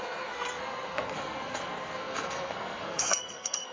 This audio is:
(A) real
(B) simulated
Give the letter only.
B